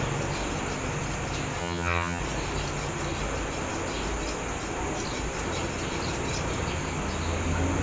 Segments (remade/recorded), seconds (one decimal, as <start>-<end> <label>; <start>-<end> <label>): 0.0-1.6 recorded; 1.6-2.2 remade; 2.2-7.8 recorded

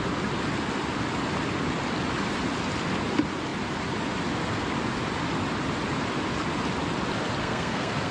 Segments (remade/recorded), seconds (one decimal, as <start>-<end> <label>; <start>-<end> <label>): 0.0-7.4 recorded; 7.4-8.1 remade

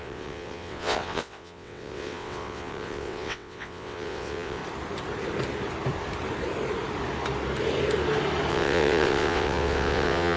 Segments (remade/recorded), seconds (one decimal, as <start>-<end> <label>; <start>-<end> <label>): 0.0-4.6 remade; 4.6-8.5 recorded; 8.5-10.4 remade

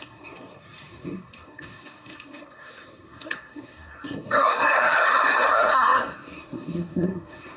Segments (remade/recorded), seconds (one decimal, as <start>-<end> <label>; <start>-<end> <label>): 0.0-7.6 remade

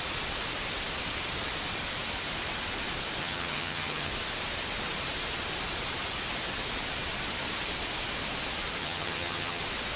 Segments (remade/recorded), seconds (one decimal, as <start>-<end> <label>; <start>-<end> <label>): 0.0-3.2 recorded; 3.2-4.1 remade; 4.1-8.8 recorded; 8.8-9.6 remade; 9.6-10.0 recorded

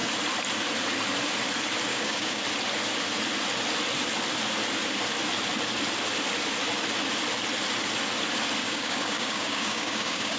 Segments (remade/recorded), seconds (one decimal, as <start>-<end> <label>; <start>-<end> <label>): 0.0-1.9 recorded; 1.9-2.4 remade; 2.4-8.6 recorded; 8.6-10.4 remade

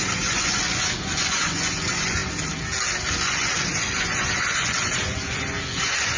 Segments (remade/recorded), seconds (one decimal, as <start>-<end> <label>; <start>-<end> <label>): 0.0-2.2 remade; 2.2-3.1 recorded; 3.1-6.2 remade